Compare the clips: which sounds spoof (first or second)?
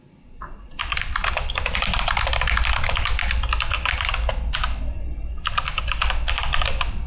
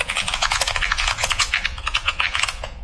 second